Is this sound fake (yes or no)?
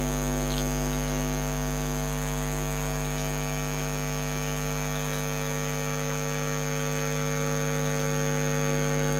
no